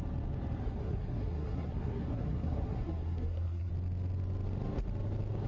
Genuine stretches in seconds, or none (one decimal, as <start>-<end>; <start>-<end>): 0.0-0.6; 3.7-5.5